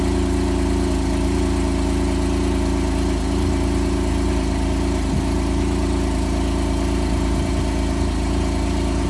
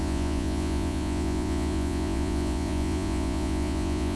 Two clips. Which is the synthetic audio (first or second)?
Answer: second